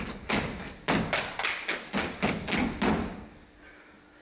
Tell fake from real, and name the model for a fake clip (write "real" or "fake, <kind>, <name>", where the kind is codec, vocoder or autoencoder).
real